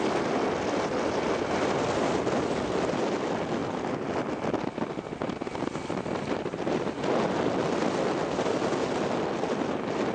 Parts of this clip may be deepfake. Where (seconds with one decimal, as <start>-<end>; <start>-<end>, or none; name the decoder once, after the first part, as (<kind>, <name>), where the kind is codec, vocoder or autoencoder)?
none